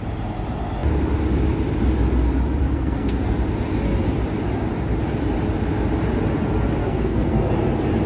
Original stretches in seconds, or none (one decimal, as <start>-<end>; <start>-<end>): 0.0-2.6; 3.3-6.8; 7.5-8.1